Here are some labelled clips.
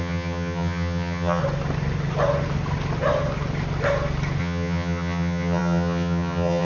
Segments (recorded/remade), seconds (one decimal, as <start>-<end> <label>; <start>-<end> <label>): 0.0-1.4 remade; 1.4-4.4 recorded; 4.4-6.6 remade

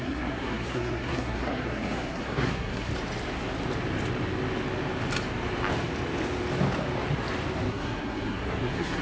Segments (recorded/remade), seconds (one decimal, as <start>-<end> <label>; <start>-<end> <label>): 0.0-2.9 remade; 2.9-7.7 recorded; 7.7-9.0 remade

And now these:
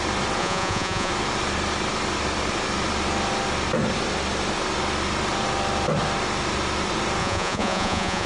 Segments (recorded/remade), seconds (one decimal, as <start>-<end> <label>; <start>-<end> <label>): 0.0-0.4 recorded; 0.4-1.1 remade; 1.1-7.2 recorded; 7.2-8.3 remade

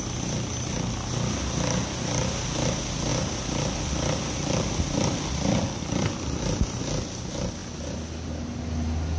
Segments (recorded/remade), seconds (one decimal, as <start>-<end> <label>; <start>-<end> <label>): 0.0-3.1 recorded; 3.1-6.8 remade; 6.8-9.2 recorded

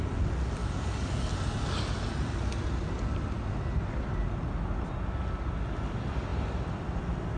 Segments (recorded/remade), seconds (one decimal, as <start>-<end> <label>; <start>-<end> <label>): 0.0-7.4 recorded

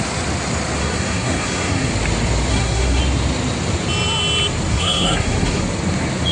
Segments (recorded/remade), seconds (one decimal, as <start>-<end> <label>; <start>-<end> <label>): 0.0-0.8 recorded; 0.8-1.9 remade; 1.9-2.5 recorded; 2.5-3.0 remade; 3.0-4.7 recorded; 4.7-5.6 remade; 5.6-6.3 recorded